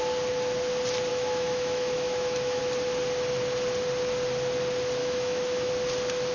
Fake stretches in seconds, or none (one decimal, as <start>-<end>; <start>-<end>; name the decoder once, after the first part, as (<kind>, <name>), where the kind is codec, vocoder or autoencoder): 1.1-2.6 (autoencoder, DAC-VAE); 5.0-5.7